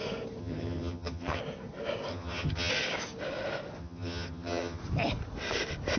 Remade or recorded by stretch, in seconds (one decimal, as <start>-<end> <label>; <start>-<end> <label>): 0.0-0.4 recorded; 0.4-1.4 remade; 1.4-2.1 recorded; 2.1-2.7 remade; 2.7-3.8 recorded; 3.8-4.8 remade; 4.8-6.0 recorded